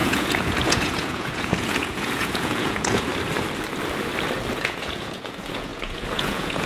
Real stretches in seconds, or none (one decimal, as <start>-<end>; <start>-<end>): 3.1-4.5